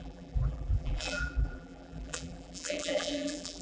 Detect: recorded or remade remade